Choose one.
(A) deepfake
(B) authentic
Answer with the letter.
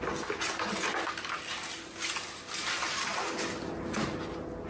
B